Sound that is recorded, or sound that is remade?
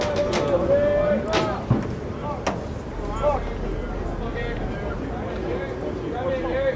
recorded